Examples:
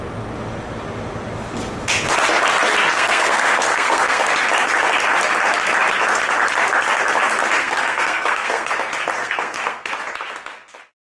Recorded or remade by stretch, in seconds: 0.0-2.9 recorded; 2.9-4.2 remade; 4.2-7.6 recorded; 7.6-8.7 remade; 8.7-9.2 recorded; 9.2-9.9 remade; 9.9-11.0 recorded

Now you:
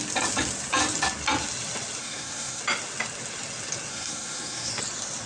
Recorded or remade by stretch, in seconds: 0.0-2.0 recorded; 2.0-2.6 remade; 2.6-3.9 recorded; 3.9-4.7 remade; 4.7-5.3 recorded

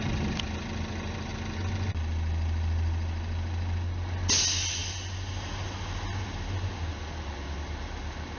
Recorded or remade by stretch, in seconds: 0.0-8.4 recorded

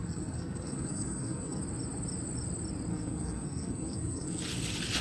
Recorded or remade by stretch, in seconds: 0.0-1.6 remade; 1.6-2.9 recorded; 2.9-4.4 remade; 4.4-5.0 recorded

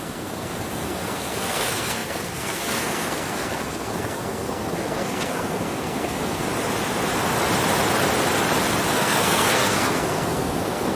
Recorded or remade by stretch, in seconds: 0.0-6.5 remade; 6.5-8.9 recorded; 8.9-11.0 remade

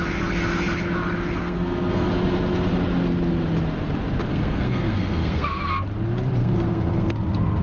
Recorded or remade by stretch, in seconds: 0.0-1.4 recorded; 1.4-2.1 remade; 2.1-4.3 recorded; 4.3-5.6 remade; 5.6-6.4 recorded; 6.4-7.1 remade; 7.1-7.6 recorded

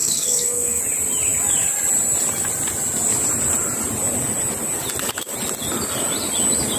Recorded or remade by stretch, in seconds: 0.0-0.8 remade; 0.8-6.8 recorded